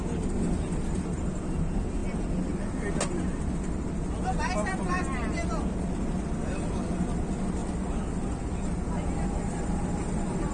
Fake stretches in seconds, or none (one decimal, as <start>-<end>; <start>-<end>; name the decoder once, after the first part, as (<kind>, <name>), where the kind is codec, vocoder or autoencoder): none